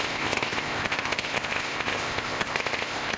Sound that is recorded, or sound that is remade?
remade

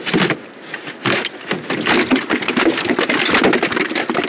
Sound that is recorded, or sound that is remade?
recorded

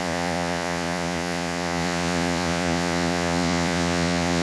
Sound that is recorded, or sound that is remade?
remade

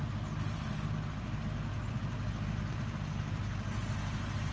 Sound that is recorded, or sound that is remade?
recorded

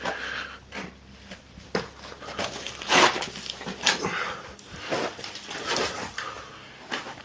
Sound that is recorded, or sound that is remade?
remade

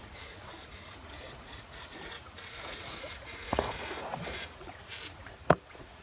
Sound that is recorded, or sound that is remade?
remade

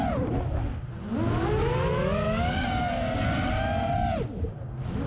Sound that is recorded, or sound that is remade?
recorded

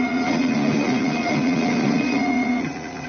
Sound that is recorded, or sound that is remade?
remade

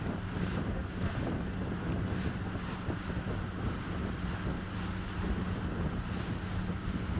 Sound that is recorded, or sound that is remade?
recorded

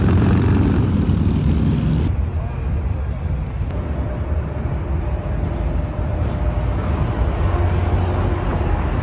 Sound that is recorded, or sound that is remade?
recorded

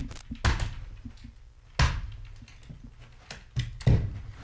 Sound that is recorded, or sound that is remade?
recorded